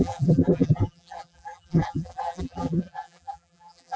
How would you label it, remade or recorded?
remade